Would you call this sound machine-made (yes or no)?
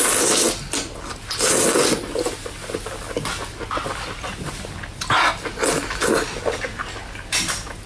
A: no